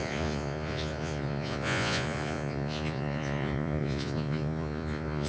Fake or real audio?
fake